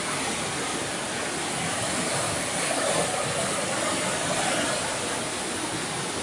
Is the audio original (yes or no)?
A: yes